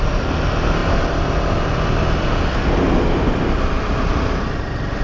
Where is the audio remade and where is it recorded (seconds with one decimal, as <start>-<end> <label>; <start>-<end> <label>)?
0.0-5.0 recorded